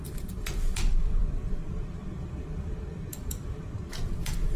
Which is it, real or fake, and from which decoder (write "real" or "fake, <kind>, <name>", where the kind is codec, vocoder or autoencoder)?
fake, vocoder, BigVGAN v2